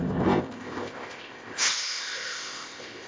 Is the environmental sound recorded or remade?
remade